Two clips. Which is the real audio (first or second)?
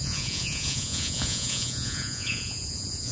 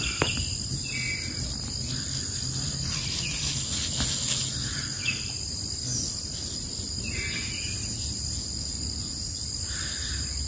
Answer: second